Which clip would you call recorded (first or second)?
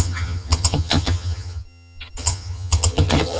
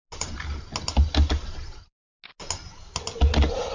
second